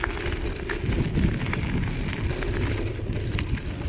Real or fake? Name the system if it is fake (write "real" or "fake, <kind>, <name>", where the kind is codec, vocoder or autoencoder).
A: real